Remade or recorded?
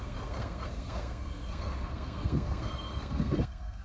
remade